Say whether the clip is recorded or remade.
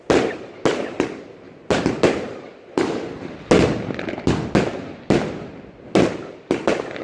recorded